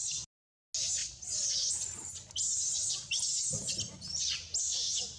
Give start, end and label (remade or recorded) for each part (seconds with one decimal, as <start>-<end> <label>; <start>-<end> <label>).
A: 0.0-1.0 recorded; 1.0-1.7 remade; 1.7-5.2 recorded